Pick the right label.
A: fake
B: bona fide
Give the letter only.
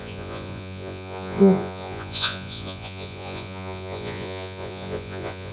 A